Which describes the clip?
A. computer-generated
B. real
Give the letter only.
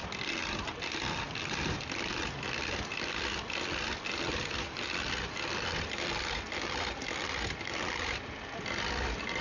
B